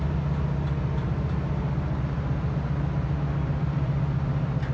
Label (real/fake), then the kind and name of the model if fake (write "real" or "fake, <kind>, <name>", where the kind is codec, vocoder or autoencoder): real